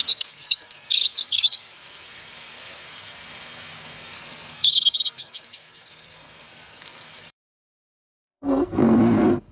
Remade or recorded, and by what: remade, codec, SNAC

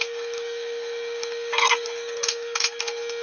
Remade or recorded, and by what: remade, codec, SNAC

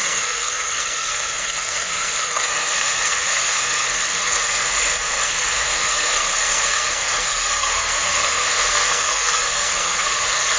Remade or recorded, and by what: remade, codec, SNAC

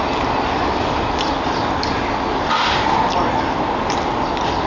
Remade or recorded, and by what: recorded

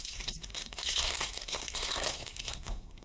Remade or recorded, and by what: remade, codec, SNAC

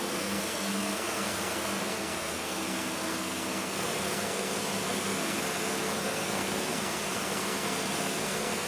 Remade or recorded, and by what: remade, codec, SNAC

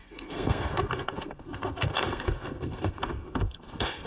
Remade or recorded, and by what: remade, codec, SNAC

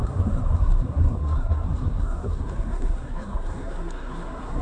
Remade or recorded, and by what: remade, codec, SNAC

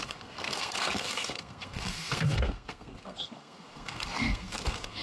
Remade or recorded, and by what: remade, codec, SNAC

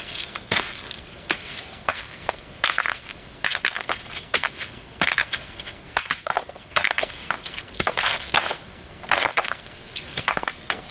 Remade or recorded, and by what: remade, codec, SNAC